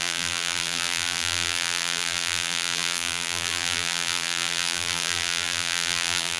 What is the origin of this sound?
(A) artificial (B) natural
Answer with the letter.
A